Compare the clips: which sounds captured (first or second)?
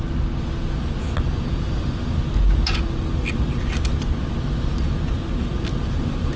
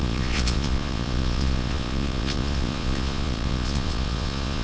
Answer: first